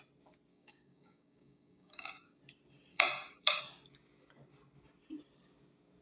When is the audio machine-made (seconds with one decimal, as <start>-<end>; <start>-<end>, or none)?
0.5-2.4; 2.9-3.6